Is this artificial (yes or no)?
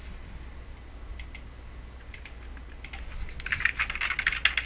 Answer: no